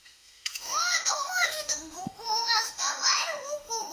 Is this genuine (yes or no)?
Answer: no